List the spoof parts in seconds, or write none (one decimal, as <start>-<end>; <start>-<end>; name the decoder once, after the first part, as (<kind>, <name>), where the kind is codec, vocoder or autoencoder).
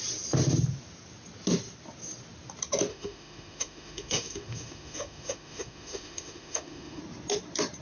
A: 2.9-7.0 (autoencoder, DAC-VAE)